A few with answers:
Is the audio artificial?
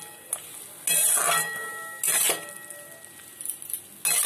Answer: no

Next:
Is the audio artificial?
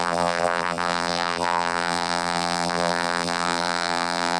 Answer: yes